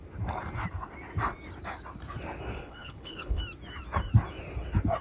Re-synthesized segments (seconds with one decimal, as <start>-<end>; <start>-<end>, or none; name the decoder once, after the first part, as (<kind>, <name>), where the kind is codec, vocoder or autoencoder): 2.5-3.4 (codec, HILCodec)